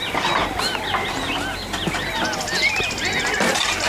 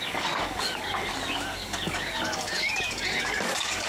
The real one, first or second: first